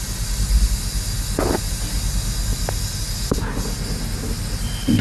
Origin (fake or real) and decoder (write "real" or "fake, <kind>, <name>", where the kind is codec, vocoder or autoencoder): real